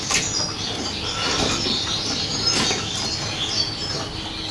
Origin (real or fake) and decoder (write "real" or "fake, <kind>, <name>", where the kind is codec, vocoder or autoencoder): real